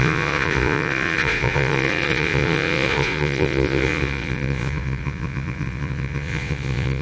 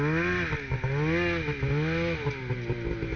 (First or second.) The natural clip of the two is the second